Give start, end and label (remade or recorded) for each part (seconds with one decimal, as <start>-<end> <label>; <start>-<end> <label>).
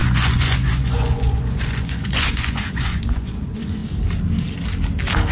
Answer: 0.0-3.8 remade; 3.8-5.3 recorded